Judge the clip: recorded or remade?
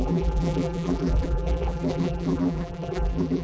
remade